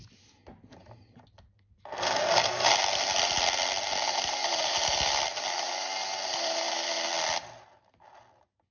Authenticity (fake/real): real